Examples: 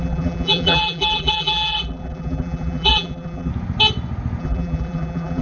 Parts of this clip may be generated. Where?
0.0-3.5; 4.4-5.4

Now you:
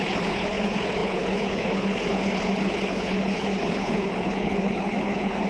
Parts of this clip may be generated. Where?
0.0-5.5